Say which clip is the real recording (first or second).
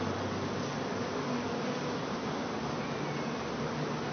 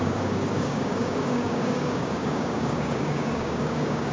first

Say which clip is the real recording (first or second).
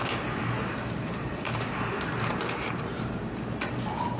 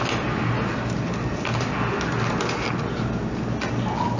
second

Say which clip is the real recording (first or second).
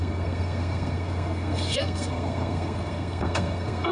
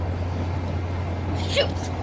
second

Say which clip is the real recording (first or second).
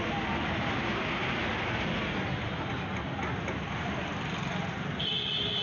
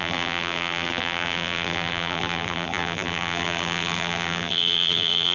first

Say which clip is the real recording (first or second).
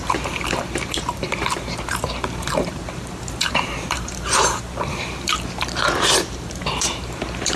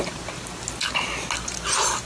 second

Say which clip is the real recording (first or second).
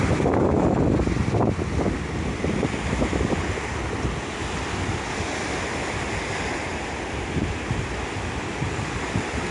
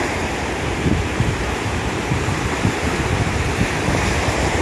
first